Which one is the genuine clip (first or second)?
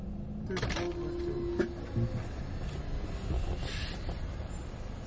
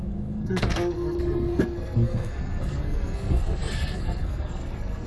first